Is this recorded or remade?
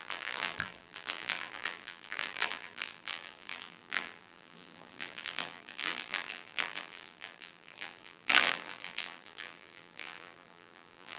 remade